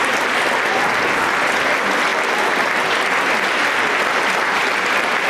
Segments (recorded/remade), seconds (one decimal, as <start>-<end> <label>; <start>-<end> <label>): 0.0-4.6 recorded; 4.6-5.3 remade